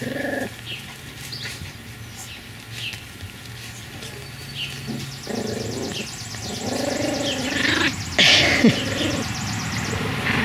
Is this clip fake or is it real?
real